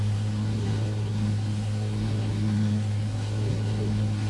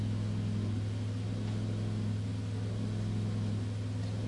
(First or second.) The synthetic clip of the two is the first